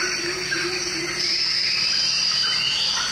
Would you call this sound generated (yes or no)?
no